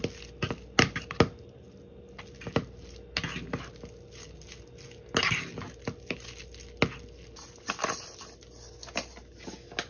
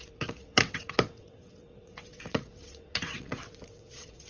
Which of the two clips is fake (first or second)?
second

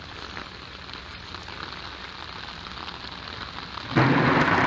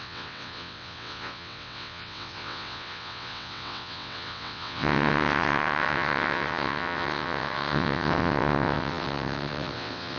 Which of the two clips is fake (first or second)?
second